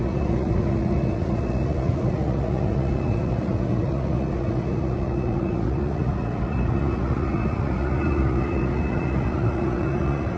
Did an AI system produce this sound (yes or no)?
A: yes